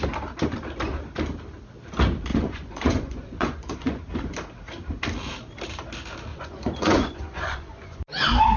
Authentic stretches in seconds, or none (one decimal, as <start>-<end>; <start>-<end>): 0.0-2.3; 4.0-6.3; 8.0-8.6